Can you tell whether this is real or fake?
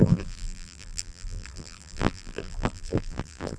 fake